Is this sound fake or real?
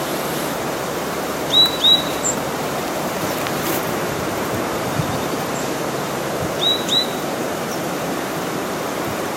fake